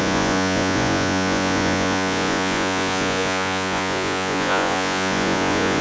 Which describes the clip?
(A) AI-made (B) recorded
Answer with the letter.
A